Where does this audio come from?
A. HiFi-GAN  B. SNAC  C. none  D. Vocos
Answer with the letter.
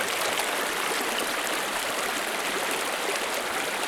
C